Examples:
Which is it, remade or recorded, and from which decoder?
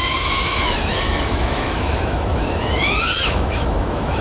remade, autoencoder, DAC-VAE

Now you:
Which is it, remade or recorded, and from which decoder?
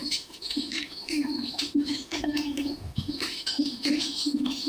remade, autoencoder, DAC-VAE